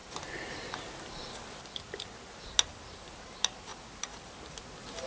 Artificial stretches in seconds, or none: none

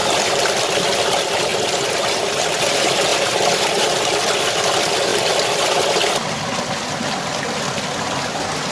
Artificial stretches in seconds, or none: 0.0-0.6 (vocoder, BigVGAN v2); 3.1-3.6; 5.1-6.9

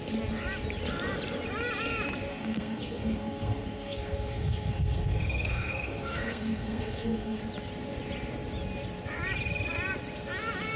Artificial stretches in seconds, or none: 2.3-7.4 (codec, SNAC)